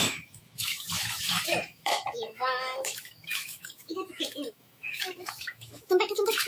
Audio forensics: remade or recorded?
remade